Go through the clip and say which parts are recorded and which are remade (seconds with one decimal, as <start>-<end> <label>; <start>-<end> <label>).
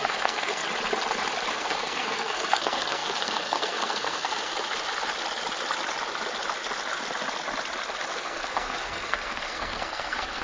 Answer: 0.0-0.6 remade; 0.6-1.5 recorded; 1.5-4.5 remade; 4.5-8.1 recorded; 8.1-10.4 remade